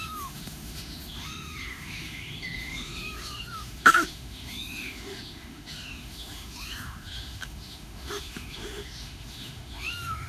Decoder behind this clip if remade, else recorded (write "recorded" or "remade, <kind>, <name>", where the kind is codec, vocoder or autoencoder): remade, autoencoder, DAC-VAE